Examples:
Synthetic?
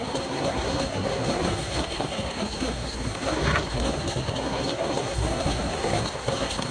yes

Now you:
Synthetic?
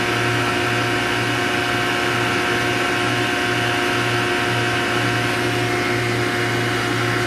no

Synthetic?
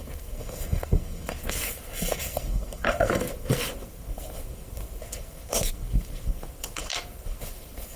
yes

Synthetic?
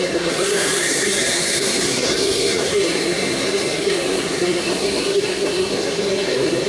yes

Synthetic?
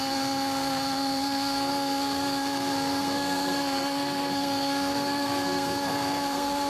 yes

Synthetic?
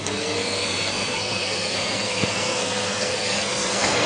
yes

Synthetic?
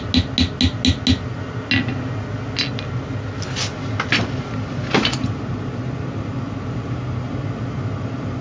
no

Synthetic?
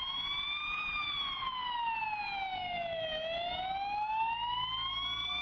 no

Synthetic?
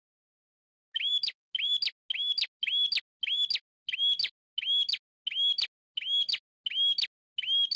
no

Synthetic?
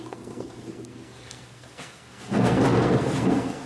yes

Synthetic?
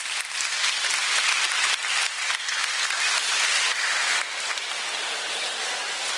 no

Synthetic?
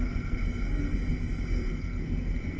yes